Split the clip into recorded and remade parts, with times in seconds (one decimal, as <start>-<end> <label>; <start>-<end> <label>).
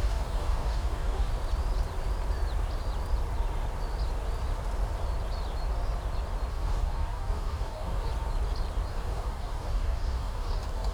0.0-1.3 remade; 1.3-6.5 recorded; 6.5-8.1 remade; 8.1-8.9 recorded; 8.9-10.9 remade